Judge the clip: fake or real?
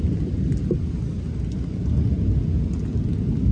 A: real